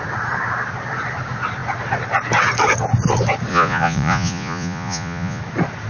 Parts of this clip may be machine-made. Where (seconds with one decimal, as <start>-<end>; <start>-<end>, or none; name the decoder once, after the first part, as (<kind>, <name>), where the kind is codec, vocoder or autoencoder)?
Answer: 3.5-5.4 (vocoder, Vocos)